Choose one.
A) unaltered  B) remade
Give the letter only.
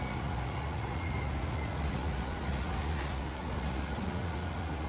B